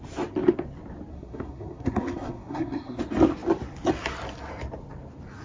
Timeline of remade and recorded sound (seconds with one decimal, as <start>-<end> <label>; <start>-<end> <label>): 0.0-1.1 recorded; 1.1-3.0 remade; 3.0-5.4 recorded